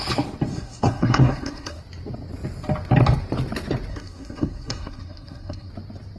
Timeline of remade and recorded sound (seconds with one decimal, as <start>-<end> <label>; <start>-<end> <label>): 0.0-0.5 recorded; 0.5-1.8 remade; 1.8-3.9 recorded; 3.9-5.7 remade; 5.7-6.2 recorded